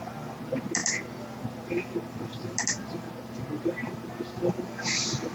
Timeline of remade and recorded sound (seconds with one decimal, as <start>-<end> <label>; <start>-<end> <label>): 0.0-5.3 recorded